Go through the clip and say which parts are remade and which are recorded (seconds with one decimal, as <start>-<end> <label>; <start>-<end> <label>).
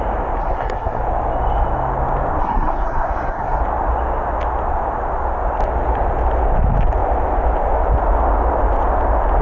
0.0-0.4 recorded; 0.4-1.0 remade; 1.0-2.4 recorded; 2.4-3.6 remade; 3.6-9.4 recorded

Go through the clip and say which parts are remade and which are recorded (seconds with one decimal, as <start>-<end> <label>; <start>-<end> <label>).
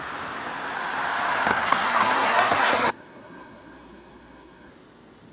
0.0-1.5 recorded; 1.5-4.7 remade; 4.7-5.3 recorded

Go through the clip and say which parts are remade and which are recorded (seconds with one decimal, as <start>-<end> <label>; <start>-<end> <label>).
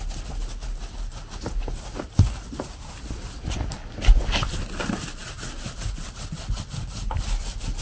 0.0-7.8 recorded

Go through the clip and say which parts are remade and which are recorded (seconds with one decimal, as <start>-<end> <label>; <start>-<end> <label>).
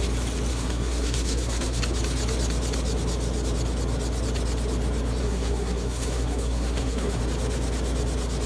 0.0-0.5 recorded; 0.5-1.8 remade; 1.8-5.2 recorded; 5.2-7.2 remade; 7.2-8.5 recorded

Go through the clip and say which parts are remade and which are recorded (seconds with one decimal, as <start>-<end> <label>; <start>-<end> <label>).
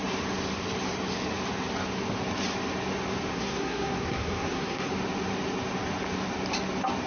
0.0-3.3 recorded; 3.3-4.9 remade; 4.9-7.1 recorded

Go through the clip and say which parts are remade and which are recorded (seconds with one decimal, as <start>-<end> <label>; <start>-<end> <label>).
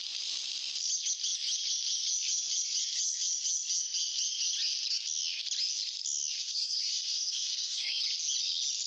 0.0-6.4 recorded; 6.4-8.0 remade; 8.0-8.9 recorded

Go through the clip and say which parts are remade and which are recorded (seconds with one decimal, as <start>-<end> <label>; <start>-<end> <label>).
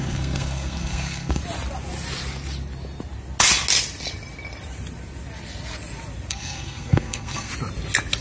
0.0-1.4 remade; 1.4-6.3 recorded; 6.3-7.5 remade; 7.5-8.2 recorded